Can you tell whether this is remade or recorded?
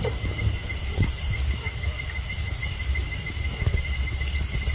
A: recorded